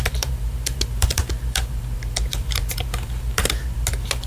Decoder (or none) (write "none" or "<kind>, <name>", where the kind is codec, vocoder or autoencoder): vocoder, BigVGAN v2